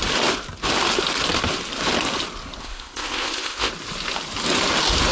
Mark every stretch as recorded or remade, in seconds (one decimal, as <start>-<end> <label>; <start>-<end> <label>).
0.0-2.6 recorded; 2.6-3.7 remade; 3.7-5.1 recorded